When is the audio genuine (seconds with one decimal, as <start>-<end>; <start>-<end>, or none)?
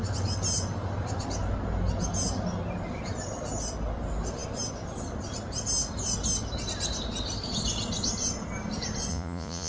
0.0-9.1